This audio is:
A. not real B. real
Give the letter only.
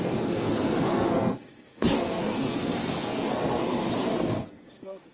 A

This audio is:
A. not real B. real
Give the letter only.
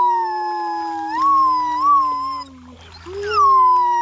B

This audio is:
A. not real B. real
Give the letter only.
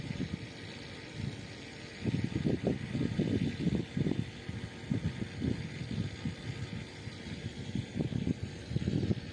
B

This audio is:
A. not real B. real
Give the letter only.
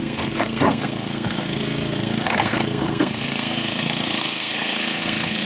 A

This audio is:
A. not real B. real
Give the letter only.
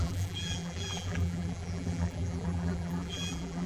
A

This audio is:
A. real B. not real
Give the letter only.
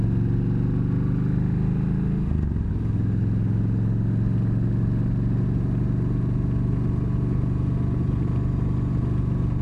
A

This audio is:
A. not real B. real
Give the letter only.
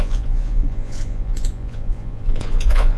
A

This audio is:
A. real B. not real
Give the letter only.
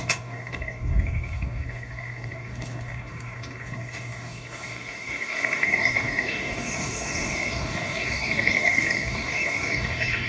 B